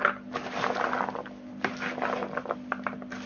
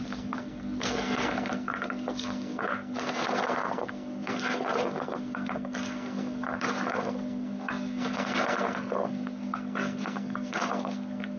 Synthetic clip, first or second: second